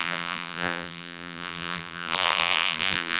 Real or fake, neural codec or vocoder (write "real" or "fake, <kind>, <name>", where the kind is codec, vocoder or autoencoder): fake, vocoder, BigVGAN v2